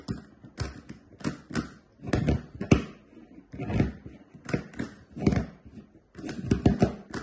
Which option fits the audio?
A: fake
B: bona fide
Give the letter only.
B